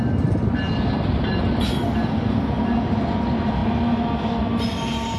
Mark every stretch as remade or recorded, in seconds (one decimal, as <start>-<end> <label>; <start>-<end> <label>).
0.0-5.2 recorded